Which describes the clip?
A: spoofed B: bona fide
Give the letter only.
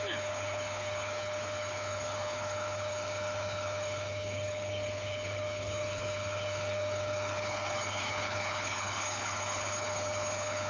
A